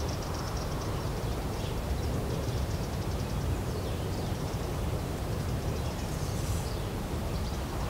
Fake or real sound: fake